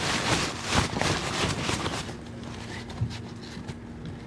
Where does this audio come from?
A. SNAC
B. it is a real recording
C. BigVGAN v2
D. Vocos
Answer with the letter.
B